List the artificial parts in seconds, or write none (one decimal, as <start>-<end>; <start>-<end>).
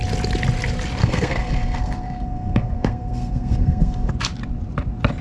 1.0-4.1